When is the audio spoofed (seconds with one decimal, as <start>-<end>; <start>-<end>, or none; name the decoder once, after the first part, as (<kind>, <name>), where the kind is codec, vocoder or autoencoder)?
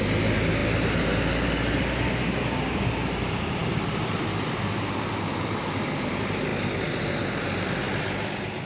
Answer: none